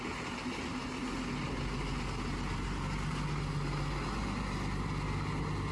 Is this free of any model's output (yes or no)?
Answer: yes